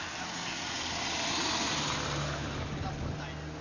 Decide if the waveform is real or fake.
real